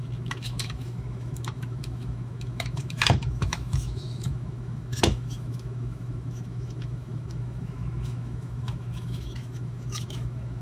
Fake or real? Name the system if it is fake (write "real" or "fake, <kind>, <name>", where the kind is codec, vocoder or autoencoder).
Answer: fake, autoencoder, DAC-VAE